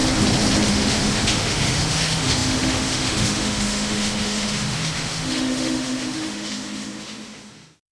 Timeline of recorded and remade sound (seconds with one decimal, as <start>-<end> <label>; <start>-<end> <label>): 0.0-0.7 recorded; 0.7-7.9 remade